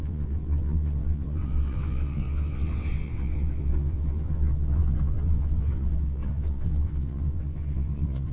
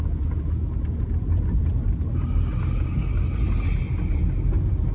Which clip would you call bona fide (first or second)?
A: second